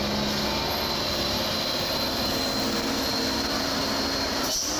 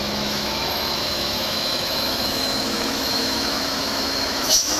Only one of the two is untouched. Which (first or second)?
first